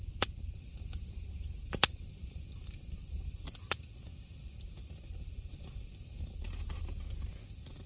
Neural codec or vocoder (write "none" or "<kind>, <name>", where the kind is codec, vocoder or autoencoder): none